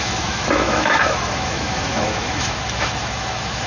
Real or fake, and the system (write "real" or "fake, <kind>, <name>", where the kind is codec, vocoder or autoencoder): fake, autoencoder, DAC-VAE